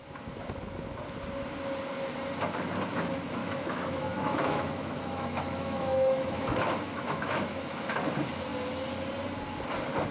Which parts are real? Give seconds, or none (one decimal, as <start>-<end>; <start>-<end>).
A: 0.0-3.4; 8.0-10.1